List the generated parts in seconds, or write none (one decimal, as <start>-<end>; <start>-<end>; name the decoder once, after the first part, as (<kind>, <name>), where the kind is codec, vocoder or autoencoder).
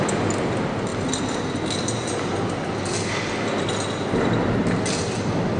none